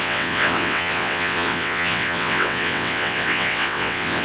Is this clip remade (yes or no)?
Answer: yes